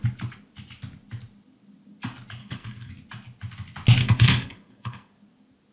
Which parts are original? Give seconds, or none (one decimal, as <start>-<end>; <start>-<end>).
0.0-2.4; 2.9-4.0; 5.1-5.7